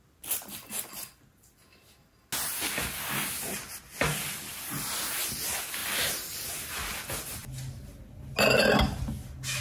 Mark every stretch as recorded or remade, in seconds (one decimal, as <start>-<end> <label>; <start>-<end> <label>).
0.0-9.6 recorded